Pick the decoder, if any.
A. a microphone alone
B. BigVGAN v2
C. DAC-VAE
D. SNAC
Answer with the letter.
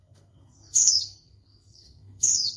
D